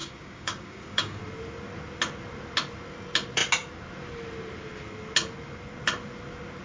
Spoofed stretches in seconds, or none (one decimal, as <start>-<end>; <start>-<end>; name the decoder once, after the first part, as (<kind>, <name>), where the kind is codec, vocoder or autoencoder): 0.0-1.2 (codec, DAC)